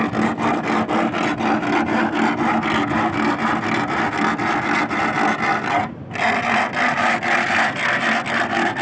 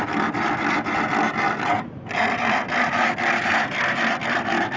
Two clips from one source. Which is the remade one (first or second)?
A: second